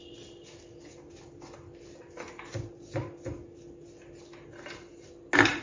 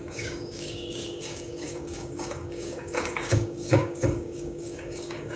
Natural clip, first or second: first